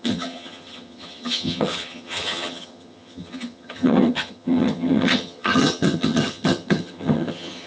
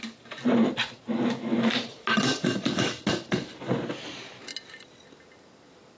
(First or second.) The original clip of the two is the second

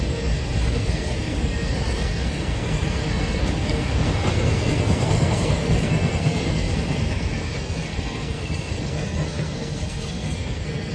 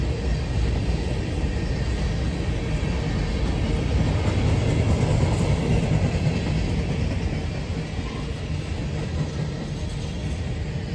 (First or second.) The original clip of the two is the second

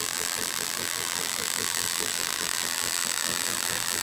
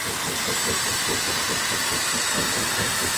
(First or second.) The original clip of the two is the second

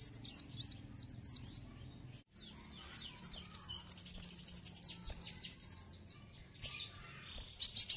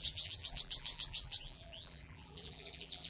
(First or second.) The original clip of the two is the first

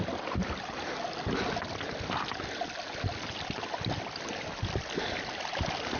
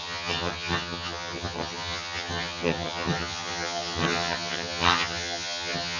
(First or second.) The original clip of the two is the first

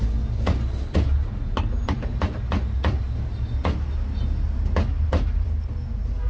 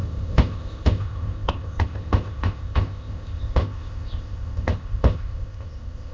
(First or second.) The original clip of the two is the first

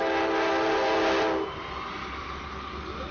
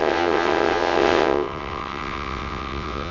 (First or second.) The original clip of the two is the first